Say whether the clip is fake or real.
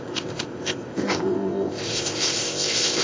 fake